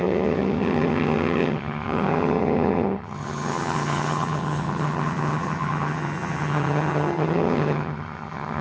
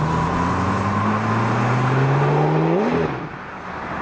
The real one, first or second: second